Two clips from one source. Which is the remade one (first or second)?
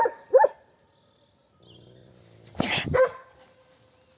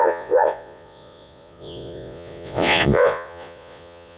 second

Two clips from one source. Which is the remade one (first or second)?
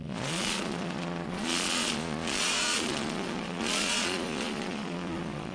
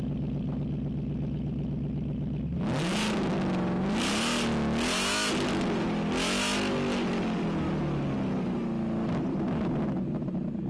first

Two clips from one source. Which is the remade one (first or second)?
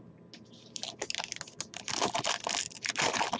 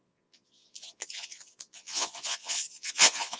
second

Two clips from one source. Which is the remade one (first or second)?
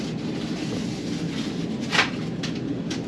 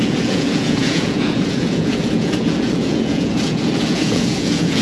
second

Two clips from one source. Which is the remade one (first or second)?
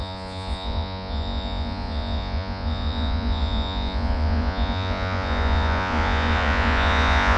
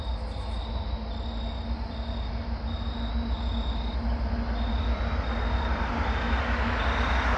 first